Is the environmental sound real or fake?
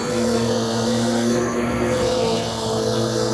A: fake